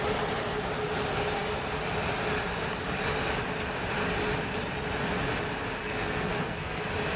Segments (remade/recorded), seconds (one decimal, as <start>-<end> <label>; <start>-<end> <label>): 0.0-5.8 recorded; 5.8-6.8 remade; 6.8-7.2 recorded